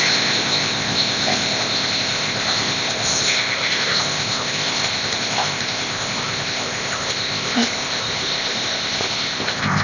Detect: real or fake fake